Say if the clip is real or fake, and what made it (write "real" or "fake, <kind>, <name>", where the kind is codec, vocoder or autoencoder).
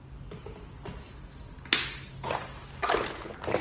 real